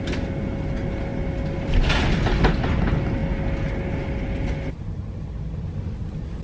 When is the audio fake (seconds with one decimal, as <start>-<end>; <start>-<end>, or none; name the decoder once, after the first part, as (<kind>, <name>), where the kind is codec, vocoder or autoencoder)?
none